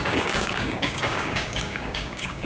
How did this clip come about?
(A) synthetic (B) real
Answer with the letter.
A